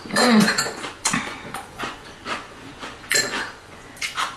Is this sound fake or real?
fake